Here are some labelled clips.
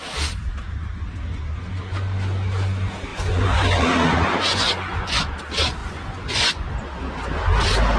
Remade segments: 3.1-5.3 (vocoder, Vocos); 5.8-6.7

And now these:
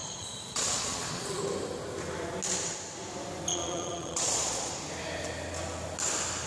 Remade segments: 0.0-1.4 (vocoder, Vocos); 3.5-4.7

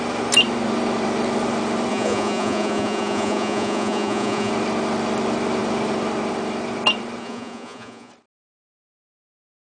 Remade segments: 1.9-4.5 (vocoder, Vocos); 7.2-8.1

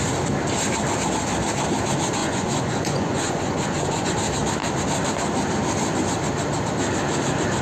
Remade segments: 2.2-4.1 (vocoder, Vocos)

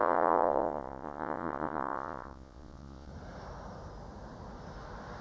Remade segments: 0.0-3.1 (vocoder, Vocos)

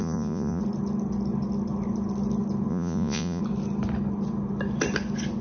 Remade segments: 0.0-0.6 (vocoder, Vocos); 2.7-3.4